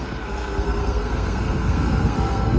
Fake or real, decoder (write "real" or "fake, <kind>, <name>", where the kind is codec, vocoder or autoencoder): fake, codec, SNAC